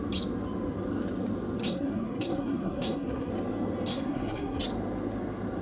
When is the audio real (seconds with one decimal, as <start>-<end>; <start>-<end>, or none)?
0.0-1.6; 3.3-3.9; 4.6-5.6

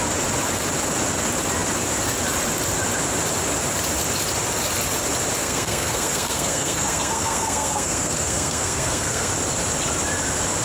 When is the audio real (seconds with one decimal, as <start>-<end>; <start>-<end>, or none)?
0.0-5.4; 9.3-10.6

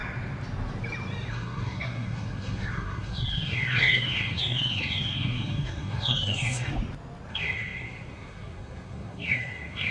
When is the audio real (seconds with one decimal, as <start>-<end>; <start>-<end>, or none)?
0.0-1.3; 6.7-7.3